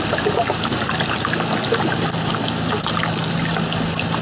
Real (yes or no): yes